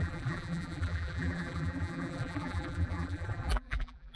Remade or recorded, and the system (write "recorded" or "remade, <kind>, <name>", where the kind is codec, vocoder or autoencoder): remade, vocoder, BigVGAN v2